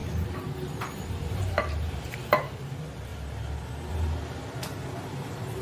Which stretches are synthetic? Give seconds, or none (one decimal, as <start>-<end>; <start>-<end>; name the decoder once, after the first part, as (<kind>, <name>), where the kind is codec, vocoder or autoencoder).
0.0-2.7 (vocoder, BigVGAN v2)